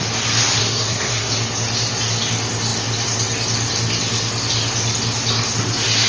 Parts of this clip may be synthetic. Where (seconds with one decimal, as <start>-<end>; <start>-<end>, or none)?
0.6-1.3